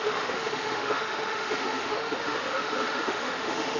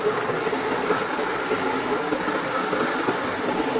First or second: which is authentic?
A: second